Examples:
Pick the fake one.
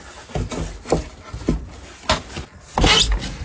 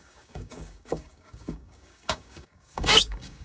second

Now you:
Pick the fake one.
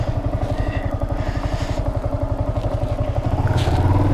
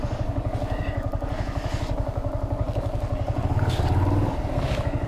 second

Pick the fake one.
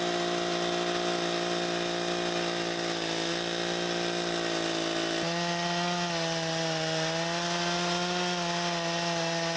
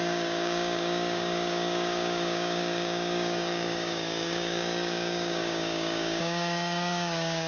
second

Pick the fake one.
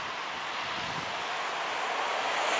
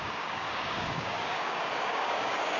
second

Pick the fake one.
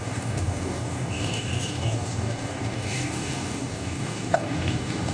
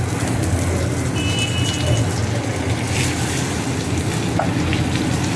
first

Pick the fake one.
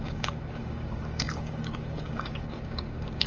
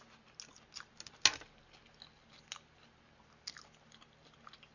first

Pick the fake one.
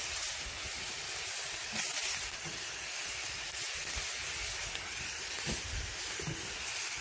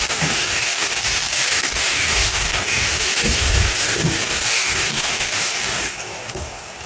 second